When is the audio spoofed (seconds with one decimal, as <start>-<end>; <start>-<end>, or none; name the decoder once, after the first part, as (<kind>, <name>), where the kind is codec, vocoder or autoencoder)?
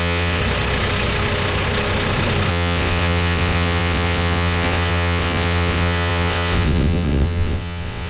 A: 0.0-0.4 (vocoder, WaveNeXt); 2.5-8.1